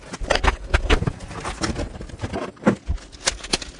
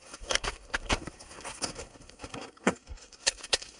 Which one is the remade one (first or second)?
second